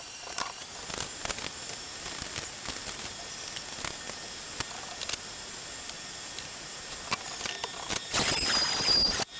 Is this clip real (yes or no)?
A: yes